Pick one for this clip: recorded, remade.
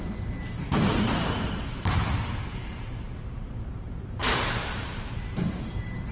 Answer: remade